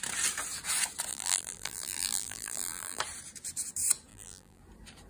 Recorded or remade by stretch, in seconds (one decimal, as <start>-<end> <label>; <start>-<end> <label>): 0.0-1.1 recorded; 1.1-3.0 remade; 3.0-4.1 recorded; 4.1-4.6 remade; 4.6-5.1 recorded